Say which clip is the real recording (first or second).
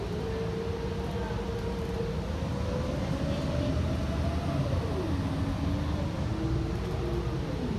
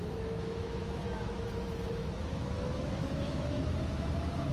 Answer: first